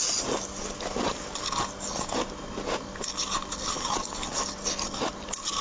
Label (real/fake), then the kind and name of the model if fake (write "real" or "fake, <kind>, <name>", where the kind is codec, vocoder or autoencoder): real